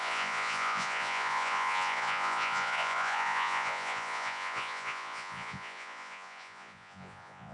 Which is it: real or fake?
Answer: fake